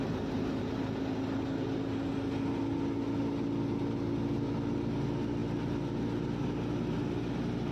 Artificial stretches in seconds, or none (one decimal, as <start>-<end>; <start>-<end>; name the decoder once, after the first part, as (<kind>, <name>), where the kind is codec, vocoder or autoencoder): none